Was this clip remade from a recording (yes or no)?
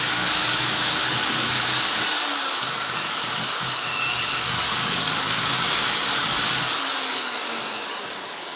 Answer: yes